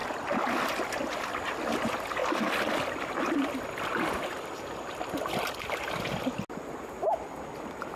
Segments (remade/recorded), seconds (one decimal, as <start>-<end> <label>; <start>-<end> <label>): 0.0-8.0 recorded